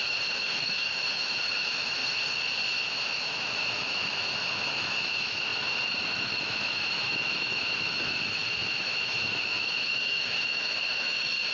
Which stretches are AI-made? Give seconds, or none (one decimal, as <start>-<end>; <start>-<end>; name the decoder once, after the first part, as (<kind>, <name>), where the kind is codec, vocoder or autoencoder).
0.0-2.0 (autoencoder, DAC-VAE); 2.9-11.5